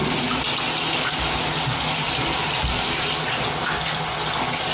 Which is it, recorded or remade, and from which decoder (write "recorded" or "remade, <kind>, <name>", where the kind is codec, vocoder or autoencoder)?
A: recorded